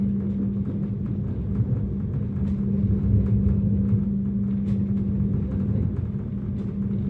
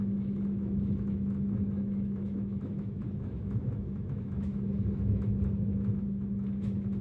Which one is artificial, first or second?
second